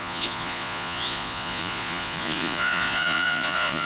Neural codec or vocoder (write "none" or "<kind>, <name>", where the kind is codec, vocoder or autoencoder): vocoder, Vocos